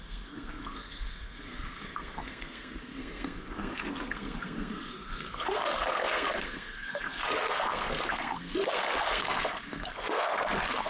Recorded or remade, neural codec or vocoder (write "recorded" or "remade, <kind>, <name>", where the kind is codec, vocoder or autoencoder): remade, codec, SNAC